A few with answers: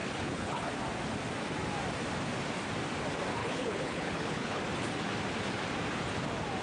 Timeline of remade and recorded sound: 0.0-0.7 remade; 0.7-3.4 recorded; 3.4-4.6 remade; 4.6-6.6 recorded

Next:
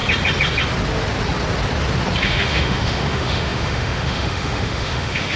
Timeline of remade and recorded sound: 0.0-2.2 recorded; 2.2-5.4 remade

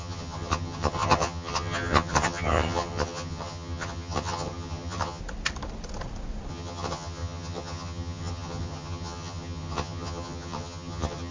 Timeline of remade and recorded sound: 0.0-5.2 remade; 5.2-6.5 recorded; 6.5-11.3 remade

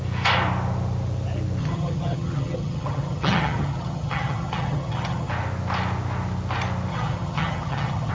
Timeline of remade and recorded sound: 0.0-1.6 recorded; 1.6-5.3 remade; 5.3-6.9 recorded; 6.9-8.1 remade

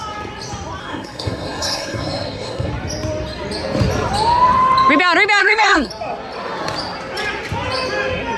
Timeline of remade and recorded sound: 0.0-0.8 recorded; 0.8-2.7 remade; 2.7-5.4 recorded; 5.4-5.9 remade; 5.9-8.4 recorded